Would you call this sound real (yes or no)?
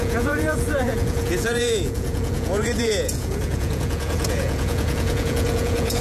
no